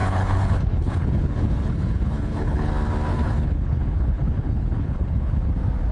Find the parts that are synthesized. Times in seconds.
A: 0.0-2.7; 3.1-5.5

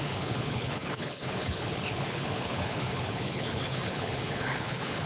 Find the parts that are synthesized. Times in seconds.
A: 0.0-5.1